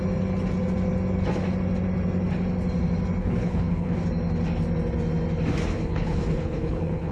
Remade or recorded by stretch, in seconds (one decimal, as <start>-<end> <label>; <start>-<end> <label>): 0.0-3.2 recorded; 3.2-4.0 remade; 4.0-5.7 recorded; 5.7-7.1 remade